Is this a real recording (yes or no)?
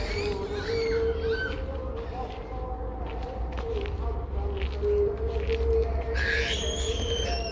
yes